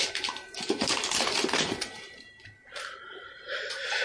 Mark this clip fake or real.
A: fake